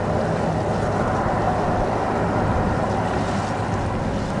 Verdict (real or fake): real